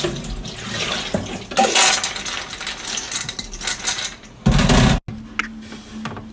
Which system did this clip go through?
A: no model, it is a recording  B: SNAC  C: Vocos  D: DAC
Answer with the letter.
A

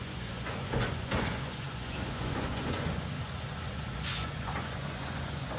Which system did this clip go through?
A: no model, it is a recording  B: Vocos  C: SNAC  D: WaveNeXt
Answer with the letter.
B